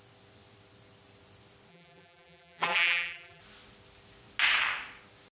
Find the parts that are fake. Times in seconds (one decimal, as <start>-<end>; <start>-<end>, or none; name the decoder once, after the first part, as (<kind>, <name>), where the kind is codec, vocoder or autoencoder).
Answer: 1.7-3.4 (vocoder, BigVGAN v2)